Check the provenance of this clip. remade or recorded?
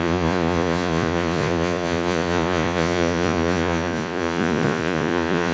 remade